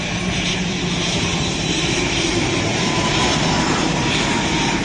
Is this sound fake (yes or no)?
yes